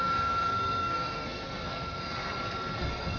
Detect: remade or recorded remade